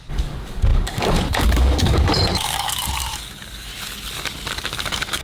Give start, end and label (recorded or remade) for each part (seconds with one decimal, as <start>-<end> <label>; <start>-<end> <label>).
0.0-3.7 remade; 3.7-4.5 recorded; 4.5-5.2 remade